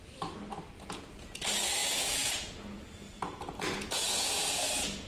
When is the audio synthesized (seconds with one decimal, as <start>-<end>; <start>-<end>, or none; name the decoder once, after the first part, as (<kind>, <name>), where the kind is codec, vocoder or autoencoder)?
0.5-1.4 (vocoder, Vocos); 1.8-5.1